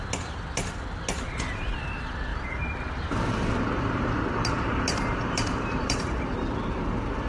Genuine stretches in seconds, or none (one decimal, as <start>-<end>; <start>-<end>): 0.0-2.3; 4.1-5.2; 6.3-7.3